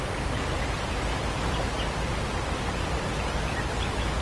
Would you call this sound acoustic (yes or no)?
yes